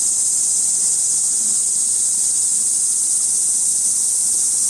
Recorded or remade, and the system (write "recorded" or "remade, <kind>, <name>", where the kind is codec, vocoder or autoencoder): recorded